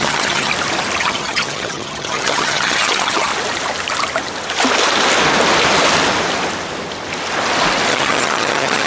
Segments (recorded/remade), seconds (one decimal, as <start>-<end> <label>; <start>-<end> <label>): 0.0-0.5 remade; 0.5-1.0 recorded; 1.0-3.3 remade; 3.3-7.9 recorded; 7.9-8.9 remade